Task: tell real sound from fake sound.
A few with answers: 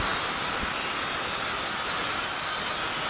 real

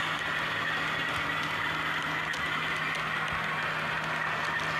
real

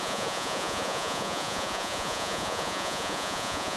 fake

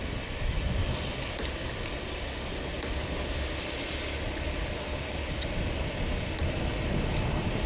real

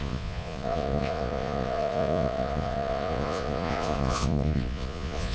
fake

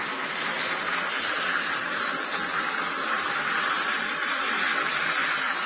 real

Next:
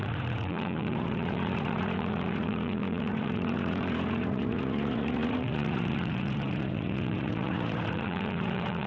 fake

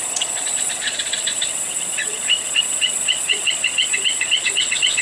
fake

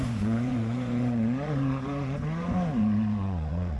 fake